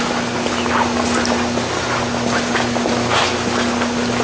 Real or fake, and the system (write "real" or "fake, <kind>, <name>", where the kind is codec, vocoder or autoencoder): real